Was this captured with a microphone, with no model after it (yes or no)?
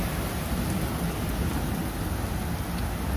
yes